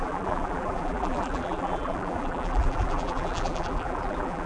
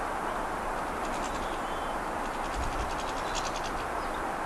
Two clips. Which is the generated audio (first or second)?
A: first